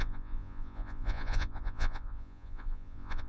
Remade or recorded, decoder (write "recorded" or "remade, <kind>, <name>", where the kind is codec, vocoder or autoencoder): remade, vocoder, Vocos